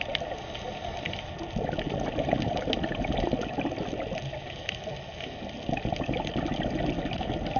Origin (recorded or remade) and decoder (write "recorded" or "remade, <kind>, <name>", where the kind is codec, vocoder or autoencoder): recorded